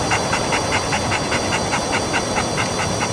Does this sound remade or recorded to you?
recorded